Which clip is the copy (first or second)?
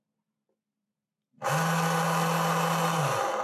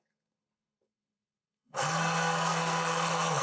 second